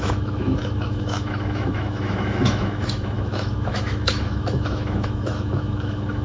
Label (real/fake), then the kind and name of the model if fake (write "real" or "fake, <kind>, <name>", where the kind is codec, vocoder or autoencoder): fake, autoencoder, DAC-VAE